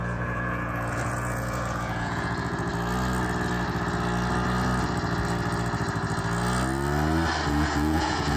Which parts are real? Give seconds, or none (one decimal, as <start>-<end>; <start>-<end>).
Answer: 2.7-7.5